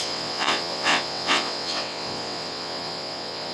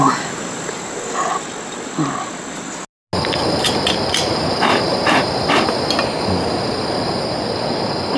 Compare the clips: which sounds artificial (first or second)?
first